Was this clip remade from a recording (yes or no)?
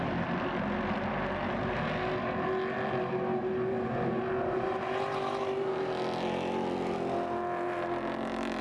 no